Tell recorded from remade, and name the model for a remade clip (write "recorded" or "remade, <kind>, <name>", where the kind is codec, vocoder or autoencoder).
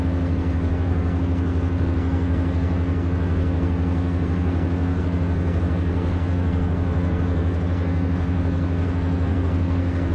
remade, codec, SNAC